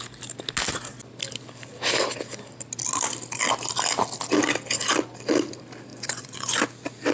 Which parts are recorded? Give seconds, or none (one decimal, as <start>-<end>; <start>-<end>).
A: 0.0-5.9; 6.6-7.1